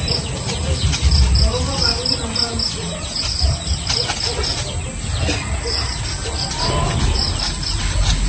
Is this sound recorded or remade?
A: recorded